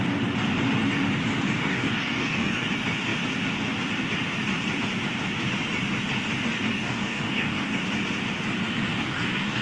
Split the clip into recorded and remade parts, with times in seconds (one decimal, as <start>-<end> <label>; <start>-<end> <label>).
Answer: 0.0-1.6 recorded; 1.6-2.7 remade; 2.7-6.7 recorded; 6.7-7.8 remade; 7.8-8.9 recorded; 8.9-9.6 remade